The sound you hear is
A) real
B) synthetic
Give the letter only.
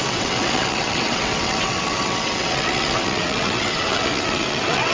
B